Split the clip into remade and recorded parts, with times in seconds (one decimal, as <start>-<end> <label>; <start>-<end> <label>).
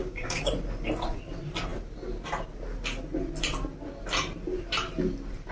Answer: 0.0-0.5 remade; 0.5-5.5 recorded